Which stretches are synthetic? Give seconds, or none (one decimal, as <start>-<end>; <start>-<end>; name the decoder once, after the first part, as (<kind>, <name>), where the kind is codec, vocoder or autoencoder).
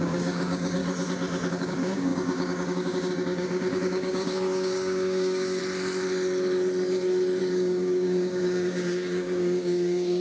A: 0.0-0.8 (codec, DAC); 1.5-5.6; 7.4-10.2